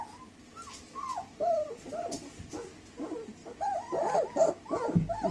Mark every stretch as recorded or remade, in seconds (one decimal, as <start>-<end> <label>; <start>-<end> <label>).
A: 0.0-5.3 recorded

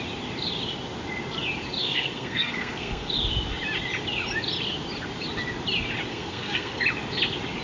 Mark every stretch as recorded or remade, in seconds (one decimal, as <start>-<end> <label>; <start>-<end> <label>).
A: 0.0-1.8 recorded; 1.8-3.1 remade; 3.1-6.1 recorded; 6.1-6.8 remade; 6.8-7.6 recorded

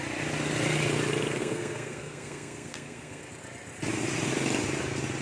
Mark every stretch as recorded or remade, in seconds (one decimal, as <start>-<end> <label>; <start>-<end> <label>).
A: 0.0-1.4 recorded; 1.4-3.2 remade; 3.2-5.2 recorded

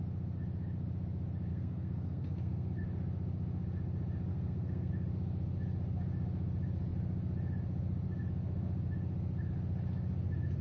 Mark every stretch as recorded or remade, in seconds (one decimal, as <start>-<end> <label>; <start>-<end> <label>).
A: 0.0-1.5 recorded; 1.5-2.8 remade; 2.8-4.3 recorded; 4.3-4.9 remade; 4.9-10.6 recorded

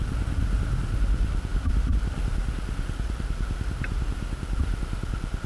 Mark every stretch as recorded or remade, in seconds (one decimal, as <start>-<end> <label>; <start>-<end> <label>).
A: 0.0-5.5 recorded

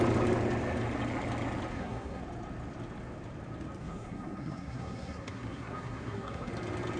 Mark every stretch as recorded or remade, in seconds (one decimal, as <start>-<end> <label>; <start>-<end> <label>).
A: 0.0-1.7 recorded; 1.7-2.2 remade; 2.2-3.8 recorded; 3.8-6.5 remade; 6.5-7.0 recorded

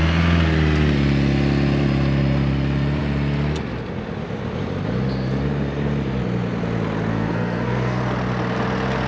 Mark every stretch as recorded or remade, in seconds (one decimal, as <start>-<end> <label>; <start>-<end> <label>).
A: 0.0-7.1 recorded; 7.1-8.0 remade; 8.0-9.1 recorded

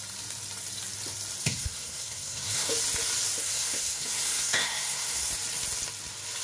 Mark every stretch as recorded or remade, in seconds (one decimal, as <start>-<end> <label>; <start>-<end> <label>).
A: 0.0-1.4 recorded; 1.4-2.7 remade; 2.7-3.4 recorded; 3.4-5.3 remade; 5.3-6.4 recorded